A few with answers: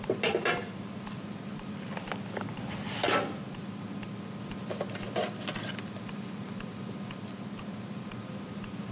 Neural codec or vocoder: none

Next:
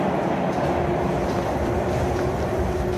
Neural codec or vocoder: vocoder, BigVGAN v2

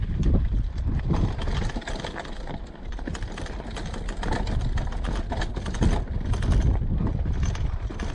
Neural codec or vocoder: none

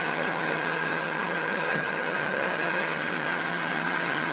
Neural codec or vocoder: vocoder, HiFi-GAN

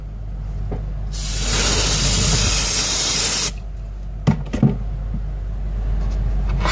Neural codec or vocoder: none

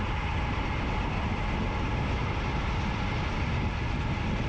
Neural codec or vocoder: none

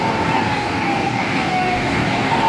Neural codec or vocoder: codec, DAC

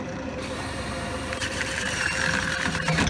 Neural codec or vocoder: vocoder, BigVGAN v2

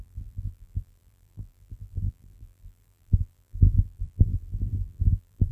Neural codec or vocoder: vocoder, BigVGAN v2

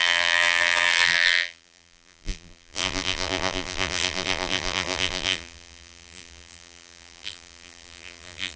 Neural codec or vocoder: vocoder, BigVGAN v2